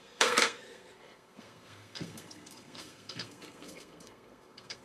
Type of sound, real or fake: fake